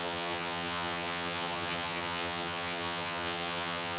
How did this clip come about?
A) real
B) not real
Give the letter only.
B